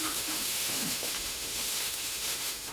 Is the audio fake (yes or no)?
yes